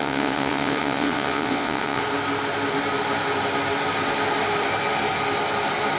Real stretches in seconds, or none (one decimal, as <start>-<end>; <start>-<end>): 2.0-6.0